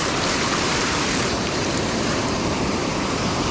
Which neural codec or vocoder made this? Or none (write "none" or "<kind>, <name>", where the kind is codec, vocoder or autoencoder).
vocoder, BigVGAN v2